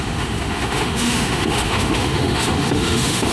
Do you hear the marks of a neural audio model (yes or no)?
yes